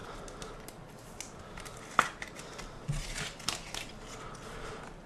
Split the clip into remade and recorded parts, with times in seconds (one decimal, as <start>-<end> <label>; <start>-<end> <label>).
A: 0.0-5.1 recorded